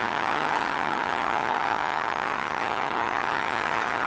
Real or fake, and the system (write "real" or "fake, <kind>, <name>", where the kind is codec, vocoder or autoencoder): fake, vocoder, HiFi-GAN